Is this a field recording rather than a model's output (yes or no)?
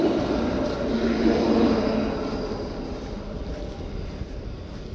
yes